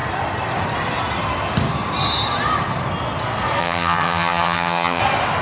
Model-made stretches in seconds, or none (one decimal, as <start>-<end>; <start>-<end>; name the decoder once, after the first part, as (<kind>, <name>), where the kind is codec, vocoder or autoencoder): 3.6-5.0 (vocoder, HiFi-GAN)